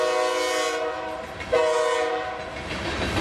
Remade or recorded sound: recorded